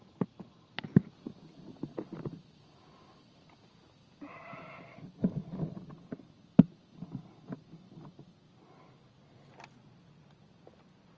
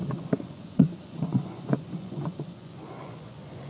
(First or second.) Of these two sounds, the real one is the first